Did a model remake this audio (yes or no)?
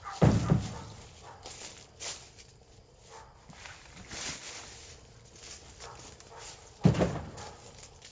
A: no